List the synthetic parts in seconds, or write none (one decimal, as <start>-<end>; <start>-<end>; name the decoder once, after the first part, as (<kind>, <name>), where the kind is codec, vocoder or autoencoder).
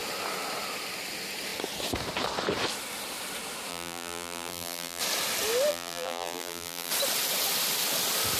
3.7-5.0 (vocoder, BigVGAN v2); 5.7-6.9